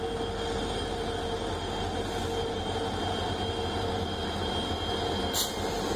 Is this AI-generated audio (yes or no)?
no